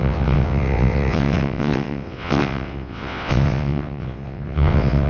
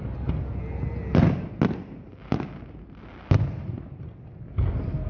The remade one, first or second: first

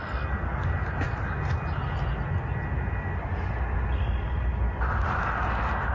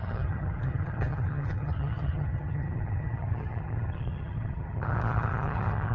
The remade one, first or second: second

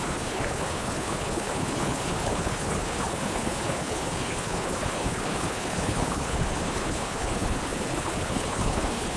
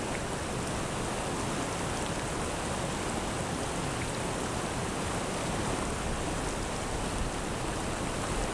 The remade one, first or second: first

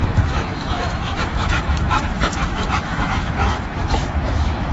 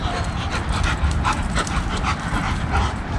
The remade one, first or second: first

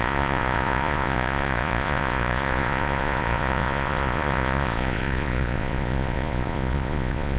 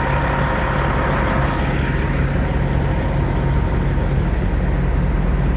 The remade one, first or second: first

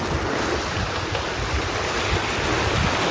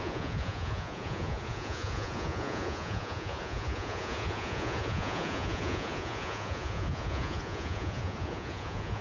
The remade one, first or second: second